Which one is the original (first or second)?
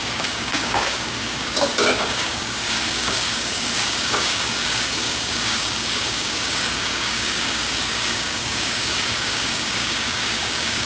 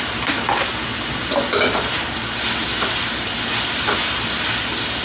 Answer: second